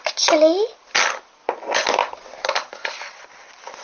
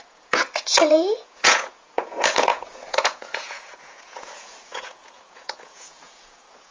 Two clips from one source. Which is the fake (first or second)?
second